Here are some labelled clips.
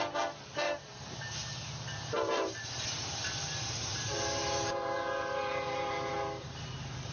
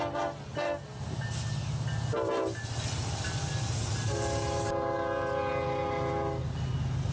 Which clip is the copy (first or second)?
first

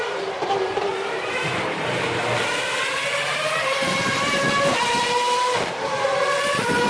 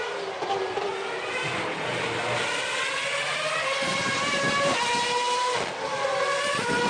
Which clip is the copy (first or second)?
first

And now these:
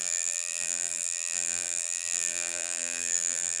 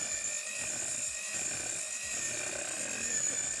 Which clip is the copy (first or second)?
first